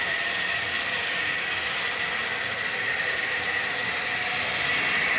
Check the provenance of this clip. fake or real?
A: real